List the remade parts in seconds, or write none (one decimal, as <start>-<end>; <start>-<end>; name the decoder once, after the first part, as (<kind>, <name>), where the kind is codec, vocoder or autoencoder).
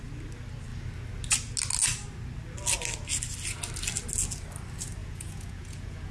5.0-6.1 (vocoder, Vocos)